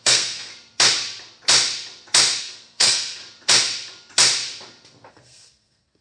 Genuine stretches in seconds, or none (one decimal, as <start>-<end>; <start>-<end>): 0.5-2.4; 3.2-5.1